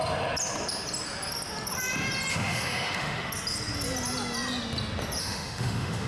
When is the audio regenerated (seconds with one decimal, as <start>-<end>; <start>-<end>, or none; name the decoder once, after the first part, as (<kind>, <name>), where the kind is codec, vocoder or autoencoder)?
2.3-3.3 (autoencoder, DAC-VAE); 5.2-6.1